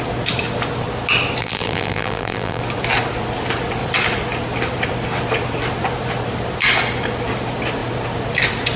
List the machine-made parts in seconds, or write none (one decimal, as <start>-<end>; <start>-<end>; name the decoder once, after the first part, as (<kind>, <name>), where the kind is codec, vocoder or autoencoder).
1.4-2.6 (vocoder, BigVGAN v2)